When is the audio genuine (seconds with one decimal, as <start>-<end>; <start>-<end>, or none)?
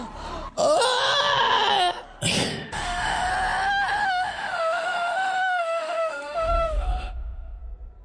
0.0-2.5; 3.3-4.0; 7.6-8.0